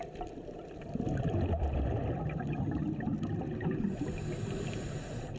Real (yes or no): yes